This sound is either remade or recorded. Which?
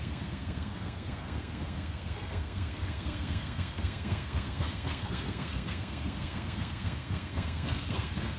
remade